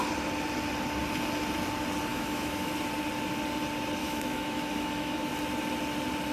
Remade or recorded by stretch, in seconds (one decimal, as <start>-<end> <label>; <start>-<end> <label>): 0.0-2.1 recorded; 2.1-2.7 remade; 2.7-4.0 recorded; 4.0-5.3 remade; 5.3-6.3 recorded